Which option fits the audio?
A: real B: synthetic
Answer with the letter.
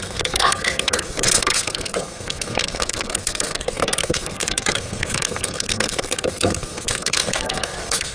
B